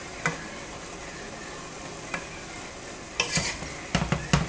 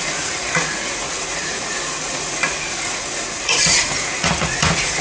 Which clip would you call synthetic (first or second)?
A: second